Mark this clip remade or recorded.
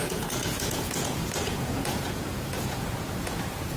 remade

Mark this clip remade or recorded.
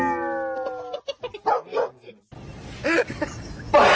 recorded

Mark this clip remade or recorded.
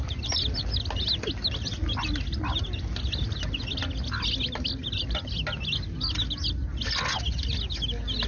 recorded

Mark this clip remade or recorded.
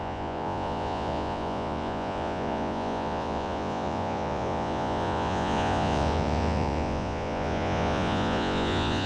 remade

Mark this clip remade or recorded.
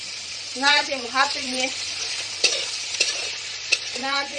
remade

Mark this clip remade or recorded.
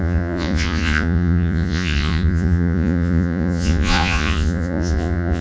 remade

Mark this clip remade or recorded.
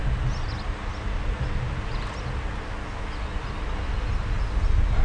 recorded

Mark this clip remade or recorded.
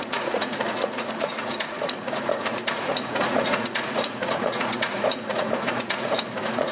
remade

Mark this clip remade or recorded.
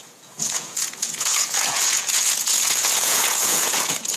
remade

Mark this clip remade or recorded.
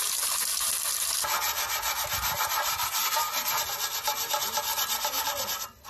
recorded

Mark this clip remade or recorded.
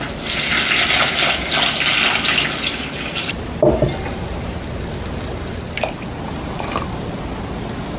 recorded